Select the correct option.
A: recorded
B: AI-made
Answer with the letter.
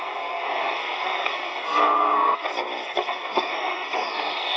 B